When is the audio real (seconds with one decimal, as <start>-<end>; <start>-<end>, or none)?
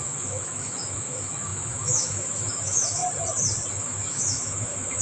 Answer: 3.0-3.7